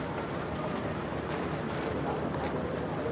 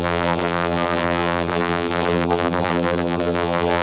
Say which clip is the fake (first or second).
second